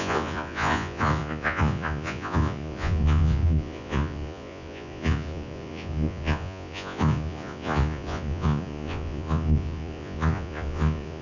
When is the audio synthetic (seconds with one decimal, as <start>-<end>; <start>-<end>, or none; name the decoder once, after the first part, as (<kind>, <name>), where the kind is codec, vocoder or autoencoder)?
0.0-11.2 (vocoder, Vocos)